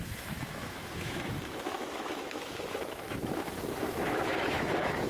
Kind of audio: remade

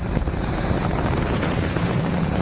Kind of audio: remade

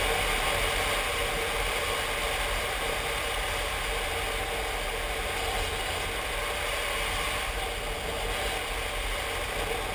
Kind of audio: recorded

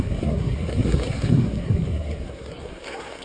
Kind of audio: remade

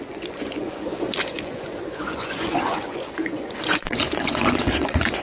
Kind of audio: remade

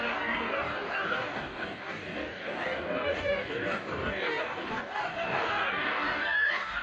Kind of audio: remade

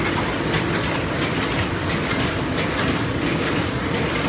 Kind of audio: recorded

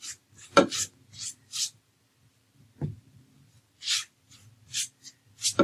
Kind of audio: remade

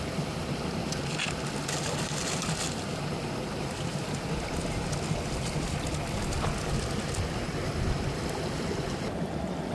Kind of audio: recorded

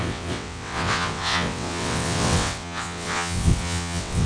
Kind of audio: remade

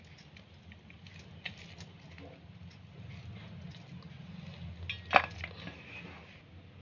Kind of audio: recorded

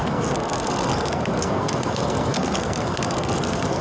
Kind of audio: remade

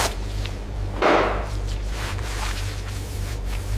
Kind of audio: remade